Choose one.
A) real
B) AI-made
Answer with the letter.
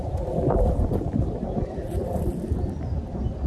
B